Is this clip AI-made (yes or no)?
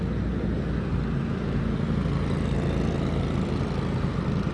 no